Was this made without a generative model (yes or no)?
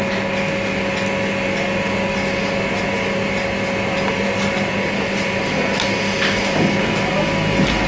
yes